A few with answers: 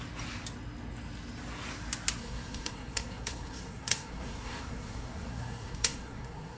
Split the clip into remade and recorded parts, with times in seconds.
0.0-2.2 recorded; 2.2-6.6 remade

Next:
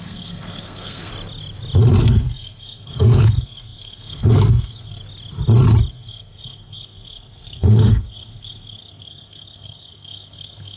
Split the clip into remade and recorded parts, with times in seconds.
0.0-1.1 remade; 1.1-2.0 recorded; 2.0-5.0 remade; 5.0-5.9 recorded; 5.9-10.8 remade

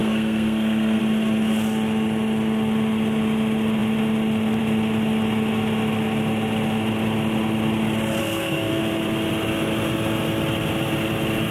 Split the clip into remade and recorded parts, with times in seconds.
0.0-1.0 remade; 1.0-8.2 recorded; 8.2-8.8 remade; 8.8-11.5 recorded

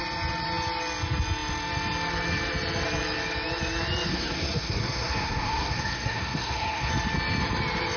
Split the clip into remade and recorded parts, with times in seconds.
0.0-4.1 recorded; 4.1-6.9 remade; 6.9-8.0 recorded

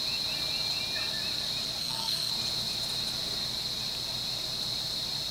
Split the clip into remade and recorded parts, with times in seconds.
0.0-1.8 recorded; 1.8-2.3 remade; 2.3-5.3 recorded

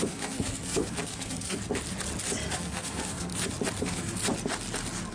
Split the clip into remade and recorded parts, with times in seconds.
0.0-1.6 remade; 1.6-2.5 recorded; 2.5-3.3 remade; 3.3-3.8 recorded; 3.8-4.2 remade; 4.2-5.1 recorded

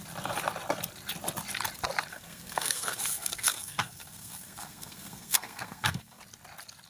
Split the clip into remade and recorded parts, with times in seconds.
0.0-2.1 recorded; 2.1-6.2 remade; 6.2-6.9 recorded

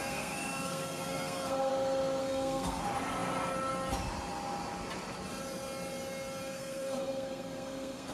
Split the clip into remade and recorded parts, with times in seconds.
0.0-1.7 remade; 1.7-2.2 recorded; 2.2-2.8 remade; 2.8-6.4 recorded; 6.4-8.1 remade